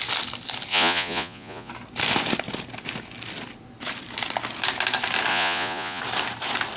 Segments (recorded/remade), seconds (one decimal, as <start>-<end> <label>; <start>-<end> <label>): 0.0-0.7 recorded; 0.7-1.7 remade; 1.7-5.3 recorded; 5.3-6.0 remade; 6.0-6.8 recorded